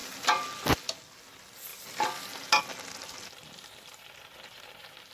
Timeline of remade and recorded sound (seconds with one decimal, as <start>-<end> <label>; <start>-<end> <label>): 0.0-3.4 recorded; 3.4-5.1 remade